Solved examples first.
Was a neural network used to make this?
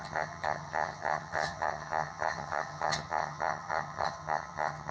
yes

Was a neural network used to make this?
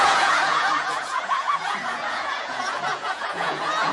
yes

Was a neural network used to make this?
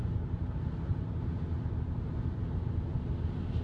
no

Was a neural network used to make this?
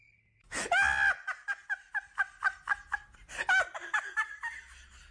no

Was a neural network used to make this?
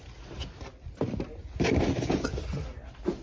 no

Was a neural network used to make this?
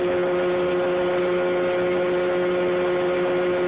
no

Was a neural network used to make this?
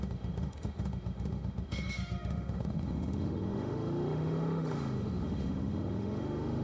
yes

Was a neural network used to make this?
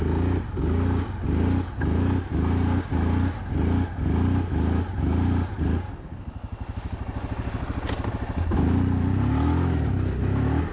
no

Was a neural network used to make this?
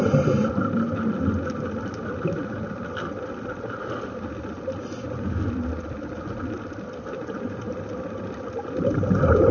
no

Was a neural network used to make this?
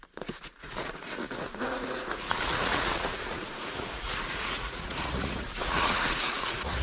yes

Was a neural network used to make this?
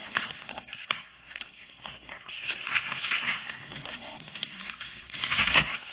yes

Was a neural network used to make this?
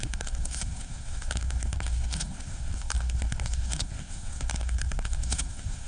yes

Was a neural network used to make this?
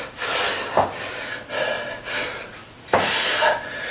no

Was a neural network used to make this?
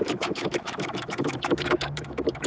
yes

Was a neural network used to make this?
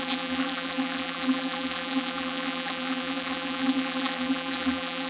yes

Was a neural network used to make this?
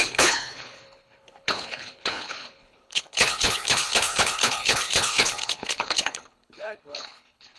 yes